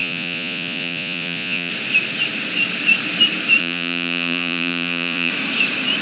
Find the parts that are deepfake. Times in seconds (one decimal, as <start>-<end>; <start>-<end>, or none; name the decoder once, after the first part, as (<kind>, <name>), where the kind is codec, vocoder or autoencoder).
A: 0.0-1.7 (vocoder, Vocos); 3.6-5.3